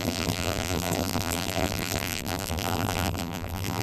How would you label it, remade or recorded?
remade